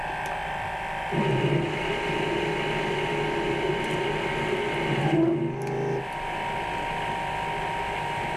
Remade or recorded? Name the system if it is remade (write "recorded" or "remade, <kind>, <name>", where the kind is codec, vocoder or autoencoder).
recorded